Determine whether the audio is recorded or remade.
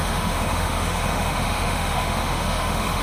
remade